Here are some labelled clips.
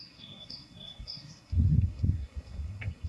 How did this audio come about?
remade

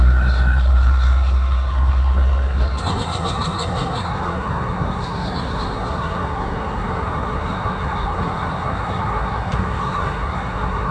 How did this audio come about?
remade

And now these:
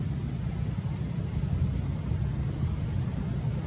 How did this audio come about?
recorded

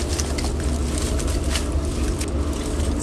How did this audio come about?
recorded